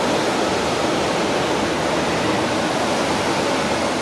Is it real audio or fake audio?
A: real